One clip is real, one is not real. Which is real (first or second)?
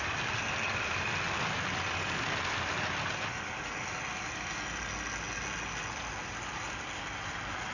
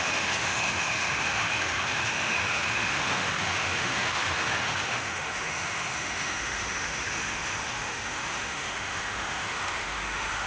first